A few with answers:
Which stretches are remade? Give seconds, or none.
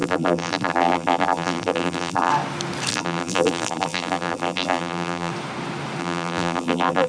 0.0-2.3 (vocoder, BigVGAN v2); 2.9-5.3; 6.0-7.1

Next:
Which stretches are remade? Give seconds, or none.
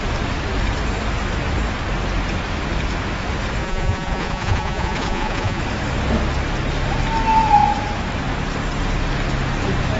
3.6-5.6 (vocoder, Vocos)